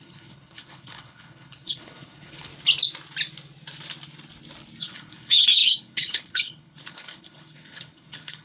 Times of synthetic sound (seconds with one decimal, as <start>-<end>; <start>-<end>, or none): 0.0-2.5; 4.8-8.4